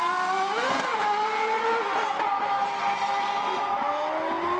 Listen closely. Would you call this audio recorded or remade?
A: recorded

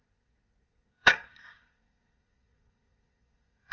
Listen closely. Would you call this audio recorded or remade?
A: remade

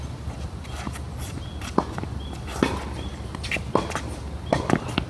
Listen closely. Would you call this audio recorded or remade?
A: recorded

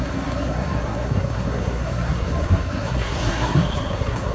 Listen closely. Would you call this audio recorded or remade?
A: remade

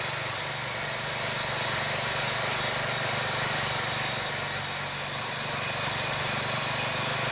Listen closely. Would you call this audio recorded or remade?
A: recorded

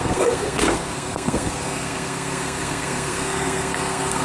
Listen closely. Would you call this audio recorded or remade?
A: remade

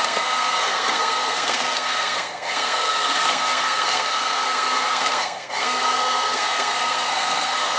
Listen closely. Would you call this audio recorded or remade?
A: remade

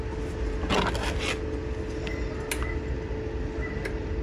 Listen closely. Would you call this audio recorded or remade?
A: recorded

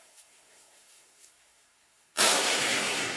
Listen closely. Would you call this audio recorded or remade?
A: remade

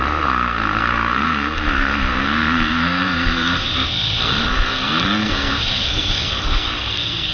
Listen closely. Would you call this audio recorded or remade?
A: remade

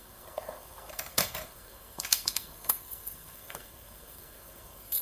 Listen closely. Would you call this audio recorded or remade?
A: remade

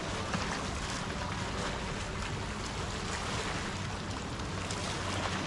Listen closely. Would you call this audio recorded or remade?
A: recorded